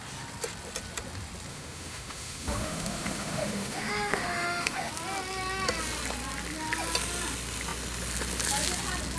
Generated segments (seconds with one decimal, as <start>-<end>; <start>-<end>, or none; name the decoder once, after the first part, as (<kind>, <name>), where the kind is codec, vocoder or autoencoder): 1.5-4.9 (autoencoder, DAC-VAE)